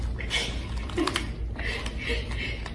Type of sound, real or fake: real